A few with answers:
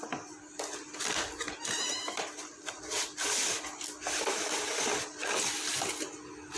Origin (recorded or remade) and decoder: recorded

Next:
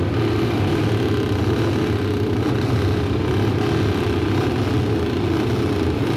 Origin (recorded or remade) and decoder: recorded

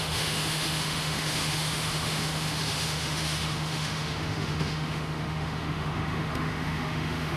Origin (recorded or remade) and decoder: remade, autoencoder, DAC-VAE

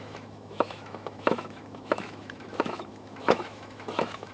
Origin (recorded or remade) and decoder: remade, autoencoder, DAC-VAE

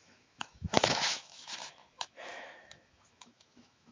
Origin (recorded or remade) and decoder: remade, autoencoder, DAC-VAE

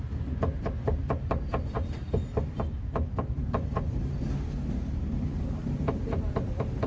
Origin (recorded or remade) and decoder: recorded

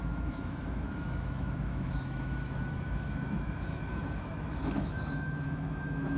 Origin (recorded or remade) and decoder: remade, autoencoder, DAC-VAE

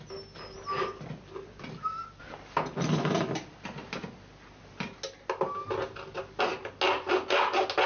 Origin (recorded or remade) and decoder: recorded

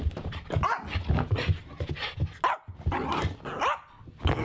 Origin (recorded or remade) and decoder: recorded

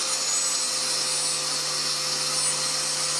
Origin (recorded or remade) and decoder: recorded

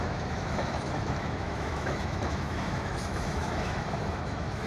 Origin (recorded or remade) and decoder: remade, autoencoder, DAC-VAE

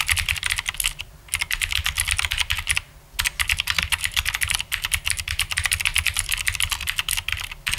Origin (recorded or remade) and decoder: recorded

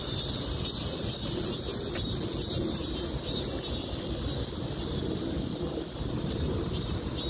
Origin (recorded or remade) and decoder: recorded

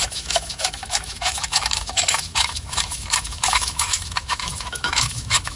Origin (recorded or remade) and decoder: remade, autoencoder, DAC-VAE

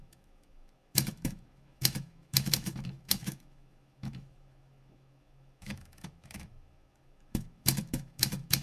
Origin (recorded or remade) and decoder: remade, autoencoder, DAC-VAE